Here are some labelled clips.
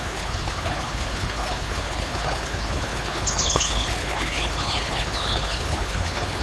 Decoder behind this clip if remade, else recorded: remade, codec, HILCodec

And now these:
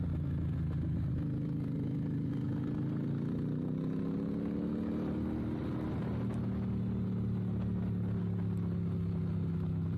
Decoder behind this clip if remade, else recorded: recorded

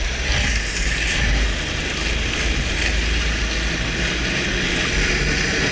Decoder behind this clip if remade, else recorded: recorded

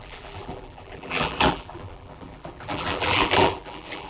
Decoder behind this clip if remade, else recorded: remade, vocoder, BigVGAN v2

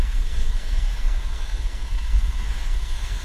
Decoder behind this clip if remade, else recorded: remade, codec, SNAC